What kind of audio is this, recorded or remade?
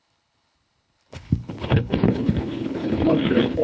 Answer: remade